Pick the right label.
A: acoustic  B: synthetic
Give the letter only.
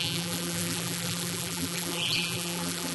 B